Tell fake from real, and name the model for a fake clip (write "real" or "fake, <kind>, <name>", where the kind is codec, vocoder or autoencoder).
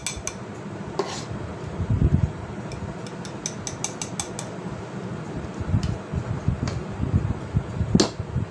real